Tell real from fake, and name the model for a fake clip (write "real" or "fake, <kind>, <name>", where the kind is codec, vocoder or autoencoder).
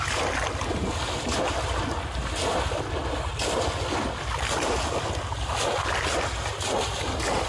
real